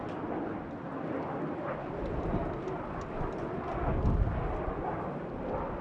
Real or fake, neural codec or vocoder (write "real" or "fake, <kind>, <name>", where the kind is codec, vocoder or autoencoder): real